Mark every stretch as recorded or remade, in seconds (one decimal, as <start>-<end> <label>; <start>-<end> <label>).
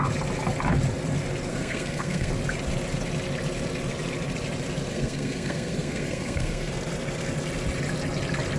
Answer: 0.0-1.5 recorded; 1.5-2.3 remade; 2.3-4.9 recorded; 4.9-6.7 remade; 6.7-8.6 recorded